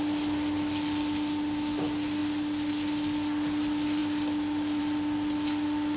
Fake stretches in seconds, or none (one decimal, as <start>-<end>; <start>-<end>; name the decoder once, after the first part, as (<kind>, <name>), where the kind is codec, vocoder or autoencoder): none